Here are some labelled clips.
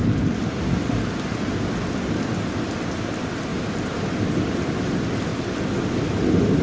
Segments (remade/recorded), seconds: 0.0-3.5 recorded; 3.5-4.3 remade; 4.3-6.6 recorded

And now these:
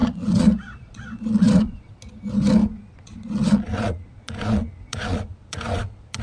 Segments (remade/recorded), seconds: 0.0-1.9 remade; 1.9-2.6 recorded; 2.6-6.2 remade

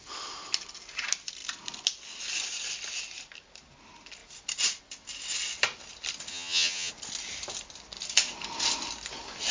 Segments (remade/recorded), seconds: 0.0-6.3 recorded; 6.3-6.9 remade; 6.9-9.5 recorded

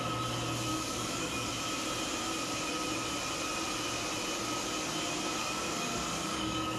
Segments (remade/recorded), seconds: 0.0-0.7 recorded; 0.7-1.5 remade; 1.5-5.4 recorded; 5.4-6.8 remade

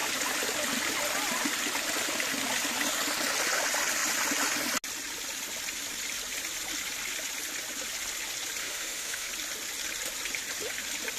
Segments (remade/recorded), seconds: 0.0-8.6 recorded; 8.6-9.3 remade; 9.3-11.2 recorded